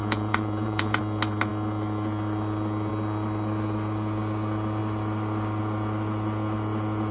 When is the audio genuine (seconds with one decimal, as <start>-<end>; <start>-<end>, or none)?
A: 1.0-7.1